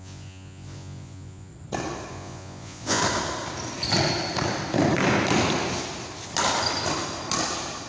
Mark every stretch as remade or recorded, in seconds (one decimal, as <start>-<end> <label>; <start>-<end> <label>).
0.0-1.5 remade; 1.5-2.1 recorded; 2.1-3.0 remade; 3.0-7.9 recorded